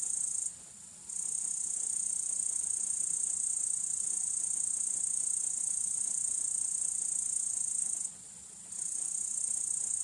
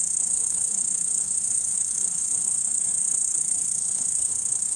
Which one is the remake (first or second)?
second